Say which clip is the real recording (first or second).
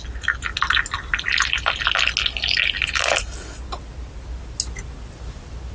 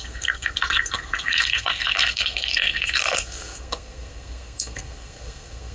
first